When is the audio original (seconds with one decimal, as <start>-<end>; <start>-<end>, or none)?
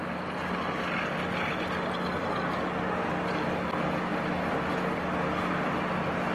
0.0-6.3